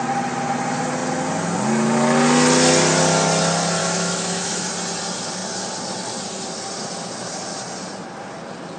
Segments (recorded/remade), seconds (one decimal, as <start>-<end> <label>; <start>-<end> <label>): 0.0-3.8 recorded; 3.8-4.7 remade; 4.7-8.8 recorded